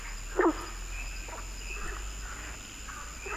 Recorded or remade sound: recorded